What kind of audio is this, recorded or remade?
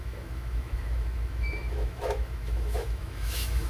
remade